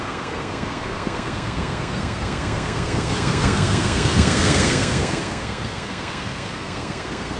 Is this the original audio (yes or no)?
no